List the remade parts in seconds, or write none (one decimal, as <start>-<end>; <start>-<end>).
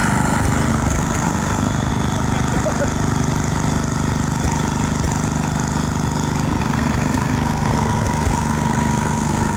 0.7-1.9; 6.6-9.6